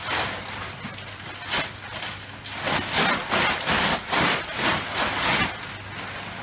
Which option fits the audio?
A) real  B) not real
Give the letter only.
A